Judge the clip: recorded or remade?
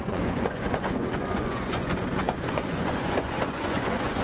remade